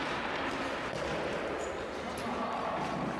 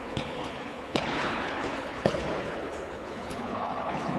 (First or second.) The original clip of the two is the first